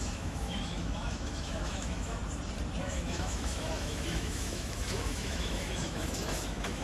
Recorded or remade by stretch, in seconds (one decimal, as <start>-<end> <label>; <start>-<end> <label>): 0.0-2.2 remade; 2.2-2.8 recorded; 2.8-6.8 remade